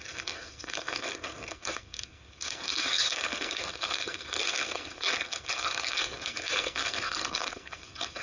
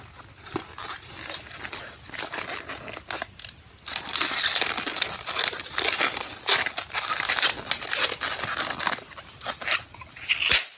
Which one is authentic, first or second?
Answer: second